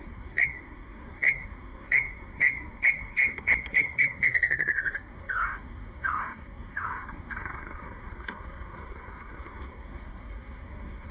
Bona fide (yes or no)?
no